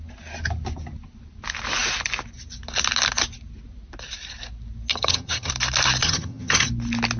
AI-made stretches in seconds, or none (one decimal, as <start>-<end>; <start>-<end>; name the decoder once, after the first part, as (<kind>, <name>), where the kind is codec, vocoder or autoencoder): 4.9-5.5 (vocoder, HiFi-GAN); 6.0-6.7